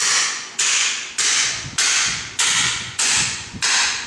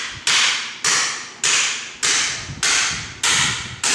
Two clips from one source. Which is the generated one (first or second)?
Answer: first